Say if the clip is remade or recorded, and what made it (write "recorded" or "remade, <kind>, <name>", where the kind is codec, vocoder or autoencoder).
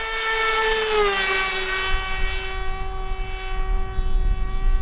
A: recorded